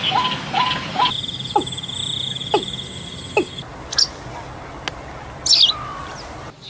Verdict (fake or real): real